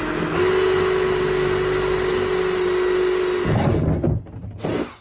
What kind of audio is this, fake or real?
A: real